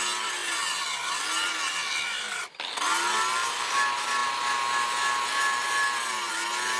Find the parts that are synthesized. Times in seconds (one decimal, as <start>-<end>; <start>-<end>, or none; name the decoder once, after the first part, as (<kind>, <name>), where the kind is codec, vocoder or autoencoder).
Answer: none